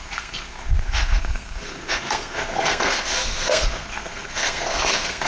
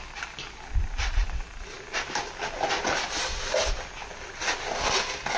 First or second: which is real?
second